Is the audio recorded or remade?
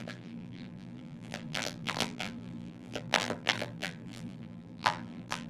remade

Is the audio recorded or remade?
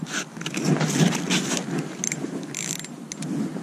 recorded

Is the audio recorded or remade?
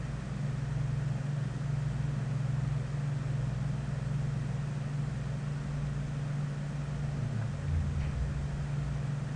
recorded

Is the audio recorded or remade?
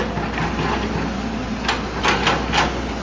recorded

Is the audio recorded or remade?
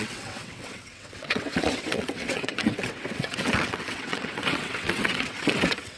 remade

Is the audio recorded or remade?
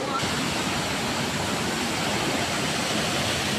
recorded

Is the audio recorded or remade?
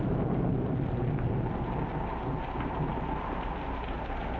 recorded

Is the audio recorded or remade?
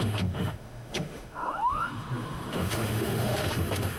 remade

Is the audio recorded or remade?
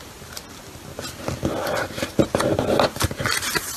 recorded